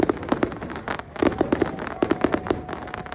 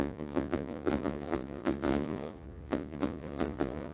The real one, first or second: first